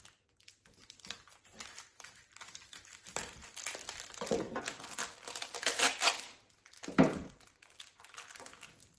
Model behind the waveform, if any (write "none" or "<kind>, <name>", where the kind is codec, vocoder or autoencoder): none